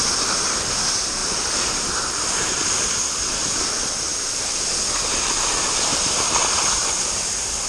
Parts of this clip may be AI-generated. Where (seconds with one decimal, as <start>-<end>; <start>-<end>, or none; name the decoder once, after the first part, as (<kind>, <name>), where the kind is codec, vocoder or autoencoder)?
1.2-3.0 (vocoder, BigVGAN v2); 5.9-7.3